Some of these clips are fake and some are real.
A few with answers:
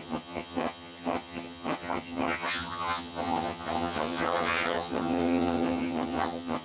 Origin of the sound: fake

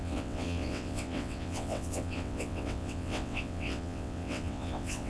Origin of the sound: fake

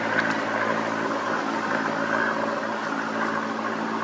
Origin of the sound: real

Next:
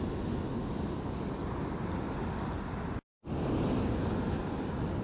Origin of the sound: real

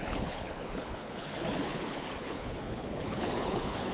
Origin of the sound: fake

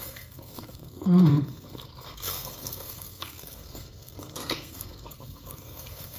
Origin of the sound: fake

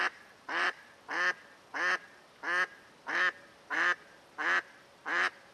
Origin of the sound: real